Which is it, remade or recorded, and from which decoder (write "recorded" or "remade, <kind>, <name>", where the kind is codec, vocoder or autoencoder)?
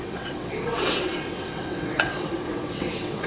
remade, vocoder, WaveNeXt